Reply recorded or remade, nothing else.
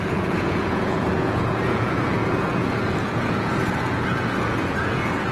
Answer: remade